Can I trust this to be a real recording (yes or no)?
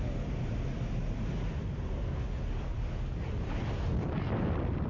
yes